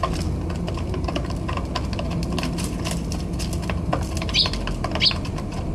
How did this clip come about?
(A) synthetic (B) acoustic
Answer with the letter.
B